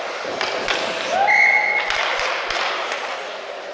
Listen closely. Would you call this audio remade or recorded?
recorded